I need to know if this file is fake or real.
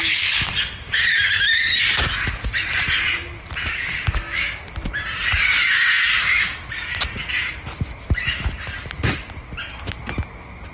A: real